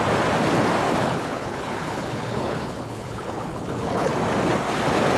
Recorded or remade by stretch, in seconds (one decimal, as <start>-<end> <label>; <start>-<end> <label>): 0.0-1.0 recorded; 1.0-4.1 remade; 4.1-5.2 recorded